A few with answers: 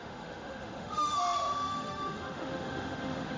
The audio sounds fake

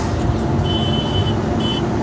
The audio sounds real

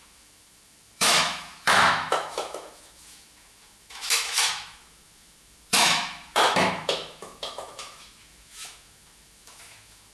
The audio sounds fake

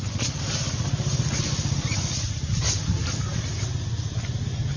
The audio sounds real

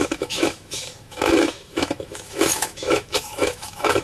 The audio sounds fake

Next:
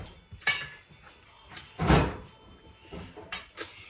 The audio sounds real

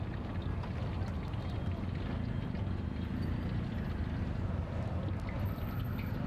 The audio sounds real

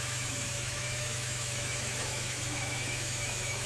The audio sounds fake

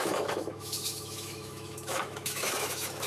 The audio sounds fake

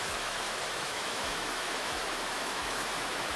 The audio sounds fake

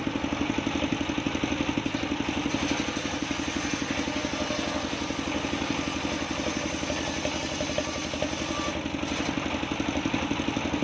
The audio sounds real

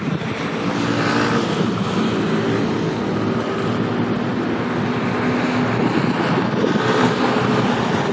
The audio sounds real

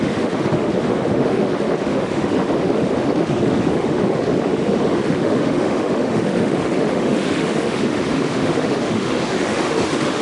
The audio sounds fake